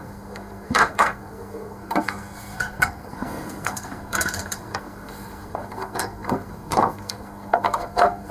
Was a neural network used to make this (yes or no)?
yes